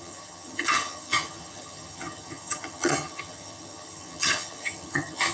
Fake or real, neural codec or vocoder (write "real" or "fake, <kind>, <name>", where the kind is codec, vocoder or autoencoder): fake, vocoder, HiFi-GAN